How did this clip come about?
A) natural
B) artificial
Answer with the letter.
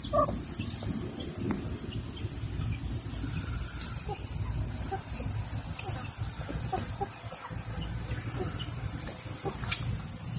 B